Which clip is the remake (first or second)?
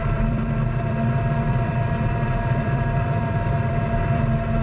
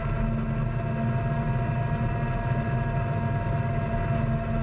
first